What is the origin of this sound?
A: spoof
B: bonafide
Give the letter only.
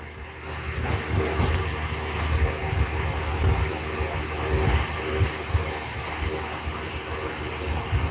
B